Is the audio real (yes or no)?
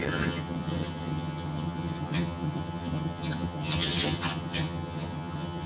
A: no